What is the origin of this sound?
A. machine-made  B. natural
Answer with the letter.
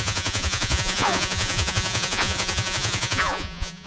A